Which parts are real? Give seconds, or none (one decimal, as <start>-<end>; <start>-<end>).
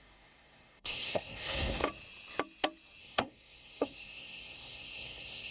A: 1.8-3.0